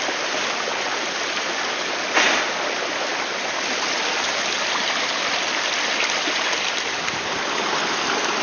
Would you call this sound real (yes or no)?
yes